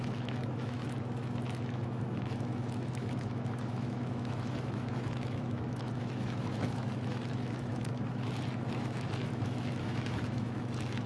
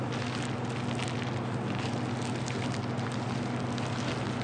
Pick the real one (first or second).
second